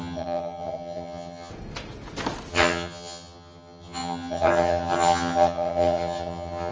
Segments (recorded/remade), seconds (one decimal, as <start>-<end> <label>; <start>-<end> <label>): 0.0-1.5 remade; 1.5-2.5 recorded; 2.5-6.7 remade

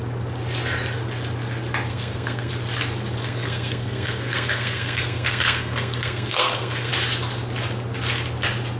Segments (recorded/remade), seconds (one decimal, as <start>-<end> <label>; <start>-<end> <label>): 0.0-1.9 recorded; 1.9-2.5 remade; 2.5-3.2 recorded; 3.2-6.9 remade; 6.9-8.8 recorded

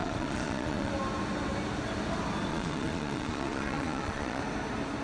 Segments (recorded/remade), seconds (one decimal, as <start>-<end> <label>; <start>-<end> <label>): 0.0-0.9 remade; 0.9-2.5 recorded; 2.5-4.4 remade; 4.4-5.0 recorded

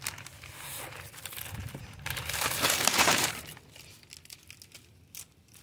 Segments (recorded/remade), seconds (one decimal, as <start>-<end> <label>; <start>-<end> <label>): 0.0-1.6 recorded; 1.6-3.4 remade; 3.4-5.6 recorded

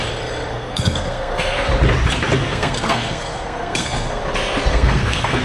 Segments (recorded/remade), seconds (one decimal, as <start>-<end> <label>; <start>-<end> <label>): 0.0-0.5 recorded; 0.5-1.7 remade; 1.7-2.4 recorded; 2.4-4.2 remade; 4.2-4.7 recorded; 4.7-5.4 remade

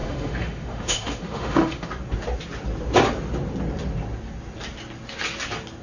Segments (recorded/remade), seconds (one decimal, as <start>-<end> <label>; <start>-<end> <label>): 0.0-1.9 remade; 1.9-5.8 recorded